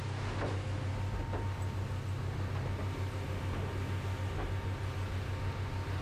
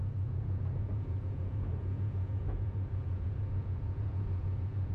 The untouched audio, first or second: first